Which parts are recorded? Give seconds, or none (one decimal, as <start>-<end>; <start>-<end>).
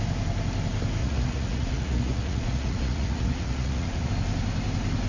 0.0-1.0; 4.1-5.1